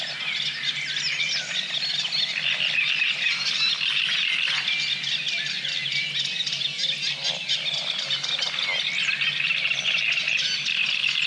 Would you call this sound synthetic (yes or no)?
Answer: no